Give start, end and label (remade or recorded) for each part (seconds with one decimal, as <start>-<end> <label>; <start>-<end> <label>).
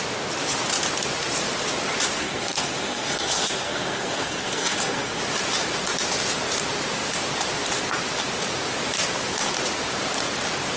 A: 0.0-2.2 recorded; 2.2-5.2 remade; 5.2-10.8 recorded